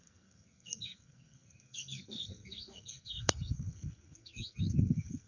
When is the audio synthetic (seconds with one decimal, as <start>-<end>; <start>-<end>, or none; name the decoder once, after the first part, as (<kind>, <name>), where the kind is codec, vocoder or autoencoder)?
0.0-5.3 (codec, SNAC)